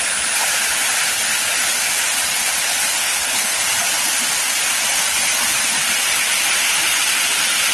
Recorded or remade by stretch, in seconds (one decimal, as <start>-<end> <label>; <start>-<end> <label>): 0.0-2.9 recorded; 2.9-3.6 remade; 3.6-7.7 recorded

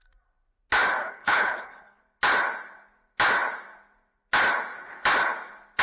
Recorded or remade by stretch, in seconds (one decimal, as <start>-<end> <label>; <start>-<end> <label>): 0.0-1.0 recorded; 1.0-2.0 remade; 2.0-5.8 recorded

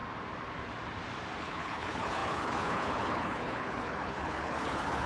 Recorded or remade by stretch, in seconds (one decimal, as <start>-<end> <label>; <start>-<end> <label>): 0.0-1.4 recorded; 1.4-5.1 remade